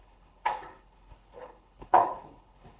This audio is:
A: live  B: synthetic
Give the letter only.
B